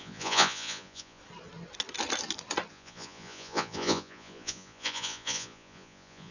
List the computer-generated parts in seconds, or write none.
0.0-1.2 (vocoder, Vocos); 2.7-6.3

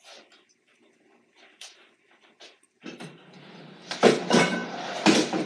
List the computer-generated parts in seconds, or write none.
none

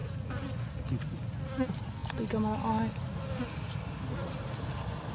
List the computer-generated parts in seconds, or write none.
none

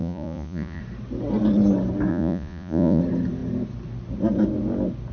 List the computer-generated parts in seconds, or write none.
0.0-0.8 (vocoder, Vocos); 2.1-3.0

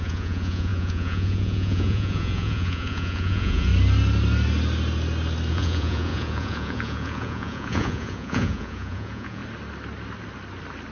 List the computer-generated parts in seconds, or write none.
0.0-3.7 (vocoder, Vocos); 5.5-9.4

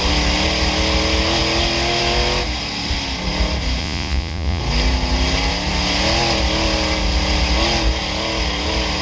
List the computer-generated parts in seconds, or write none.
3.8-4.6 (vocoder, Vocos)